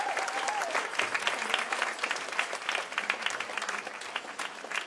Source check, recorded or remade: remade